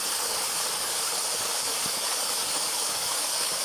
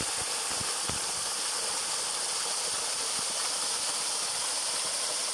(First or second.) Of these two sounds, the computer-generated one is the first